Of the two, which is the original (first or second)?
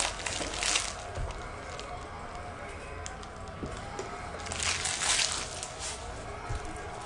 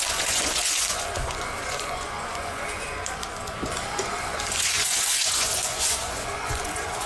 first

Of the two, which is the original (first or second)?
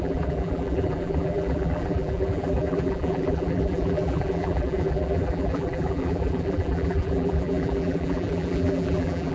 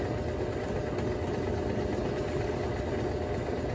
second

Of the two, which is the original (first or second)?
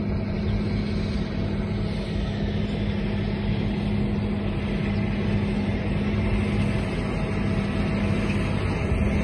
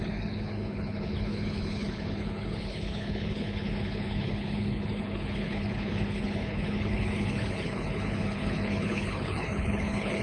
first